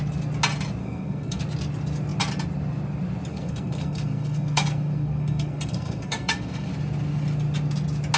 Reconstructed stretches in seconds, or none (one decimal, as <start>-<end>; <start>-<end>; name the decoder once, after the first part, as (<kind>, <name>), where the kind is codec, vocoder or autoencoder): 0.8-1.4 (codec, SNAC); 3.3-6.7